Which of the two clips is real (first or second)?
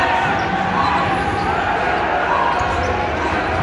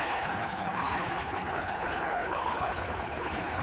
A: first